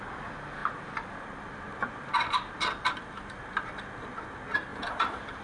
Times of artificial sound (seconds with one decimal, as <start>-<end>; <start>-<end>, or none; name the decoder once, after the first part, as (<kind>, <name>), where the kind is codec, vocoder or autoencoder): 0.6-3.8 (vocoder, BigVGAN v2); 4.7-5.4